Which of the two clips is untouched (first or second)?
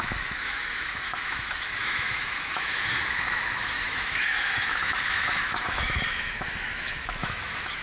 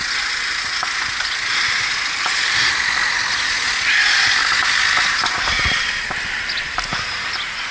second